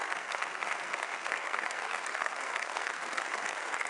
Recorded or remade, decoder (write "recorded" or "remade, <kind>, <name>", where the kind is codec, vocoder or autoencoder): remade, codec, SNAC